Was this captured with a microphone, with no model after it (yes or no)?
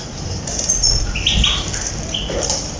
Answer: yes